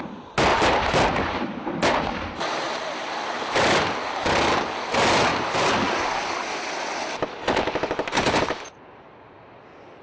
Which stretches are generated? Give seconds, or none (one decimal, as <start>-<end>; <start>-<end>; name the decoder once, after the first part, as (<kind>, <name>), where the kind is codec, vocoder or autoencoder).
none